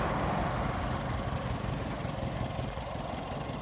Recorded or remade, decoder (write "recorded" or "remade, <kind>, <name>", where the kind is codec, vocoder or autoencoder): recorded